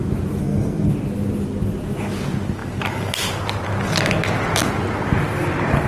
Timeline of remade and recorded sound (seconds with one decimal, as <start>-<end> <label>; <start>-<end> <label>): 0.0-0.4 recorded; 0.4-0.9 remade; 0.9-5.9 recorded